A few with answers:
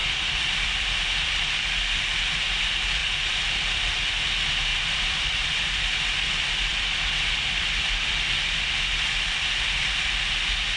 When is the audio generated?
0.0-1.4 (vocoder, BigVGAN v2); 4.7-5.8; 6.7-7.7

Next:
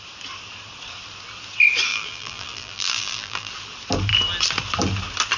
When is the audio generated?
1.9-3.5 (vocoder, BigVGAN v2)

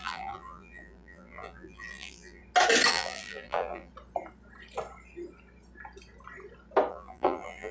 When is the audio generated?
0.0-2.4 (vocoder, BigVGAN v2); 2.9-3.9; 6.9-7.7

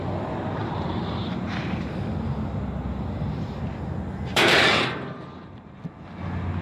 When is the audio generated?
0.6-2.0 (vocoder, BigVGAN v2); 4.3-5.9

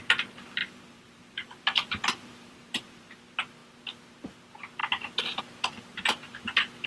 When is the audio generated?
0.6-3.1 (vocoder, BigVGAN v2)

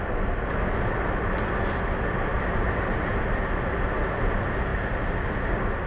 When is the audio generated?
2.3-3.2 (vocoder, BigVGAN v2)